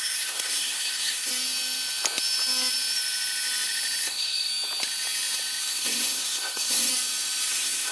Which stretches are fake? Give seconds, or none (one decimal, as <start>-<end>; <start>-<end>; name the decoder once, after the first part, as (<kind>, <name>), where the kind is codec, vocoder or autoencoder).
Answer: 0.0-1.3 (codec, SNAC); 4.0-4.5; 5.7-6.9; 7.5-7.9